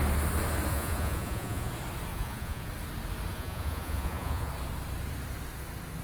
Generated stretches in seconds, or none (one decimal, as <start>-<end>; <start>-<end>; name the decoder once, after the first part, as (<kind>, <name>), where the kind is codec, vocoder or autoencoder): 0.7-1.7 (vocoder, Vocos); 2.1-2.7; 3.3-4.5